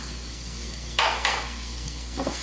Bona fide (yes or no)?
no